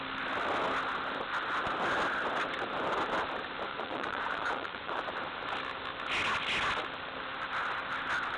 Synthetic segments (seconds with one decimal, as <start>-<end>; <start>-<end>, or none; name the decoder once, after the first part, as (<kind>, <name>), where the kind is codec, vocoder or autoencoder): 3.7-5.0 (vocoder, Vocos)